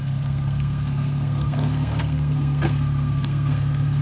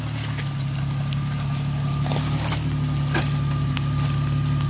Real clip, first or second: second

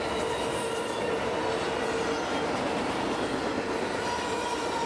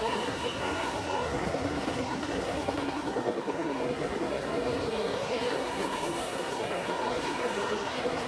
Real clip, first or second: first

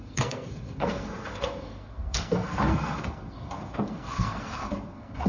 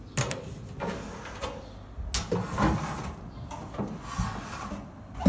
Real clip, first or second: second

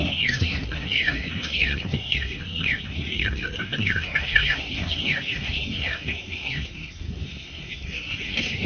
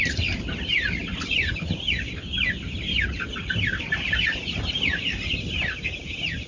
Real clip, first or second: second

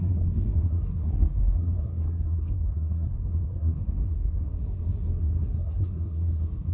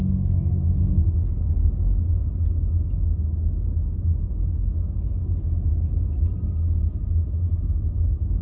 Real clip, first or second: second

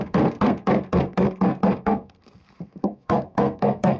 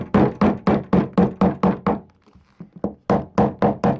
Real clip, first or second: second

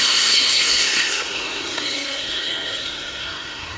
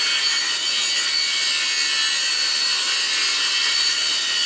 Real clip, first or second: second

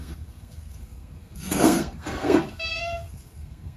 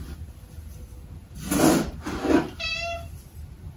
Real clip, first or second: second